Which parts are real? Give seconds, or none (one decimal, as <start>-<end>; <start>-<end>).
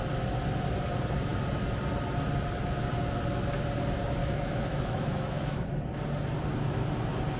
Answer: 0.0-4.2; 5.7-7.4